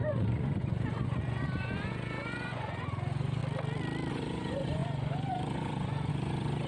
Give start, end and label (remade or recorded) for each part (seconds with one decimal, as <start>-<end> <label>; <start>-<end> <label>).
0.0-3.4 remade; 3.4-4.1 recorded; 4.1-6.7 remade